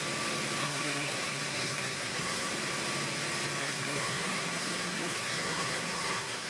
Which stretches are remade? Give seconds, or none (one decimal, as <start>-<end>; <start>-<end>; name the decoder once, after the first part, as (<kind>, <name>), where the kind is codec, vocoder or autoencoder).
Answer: 0.6-2.5 (codec, SNAC); 3.6-6.5